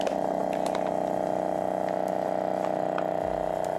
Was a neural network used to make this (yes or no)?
no